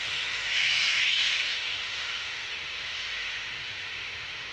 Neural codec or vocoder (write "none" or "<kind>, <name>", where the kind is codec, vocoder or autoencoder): autoencoder, DAC-VAE